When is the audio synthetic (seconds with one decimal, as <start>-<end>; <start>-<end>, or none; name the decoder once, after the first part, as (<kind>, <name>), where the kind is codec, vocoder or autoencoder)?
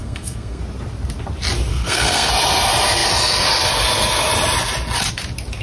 0.0-0.6 (codec, SNAC); 1.7-2.3